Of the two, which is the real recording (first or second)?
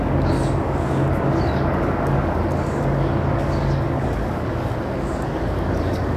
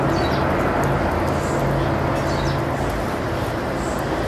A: second